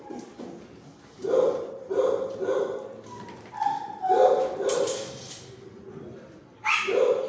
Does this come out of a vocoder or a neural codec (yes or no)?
no